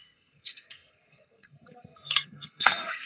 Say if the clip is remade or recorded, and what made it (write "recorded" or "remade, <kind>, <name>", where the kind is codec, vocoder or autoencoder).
remade, codec, SNAC